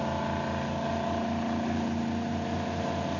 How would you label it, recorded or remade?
recorded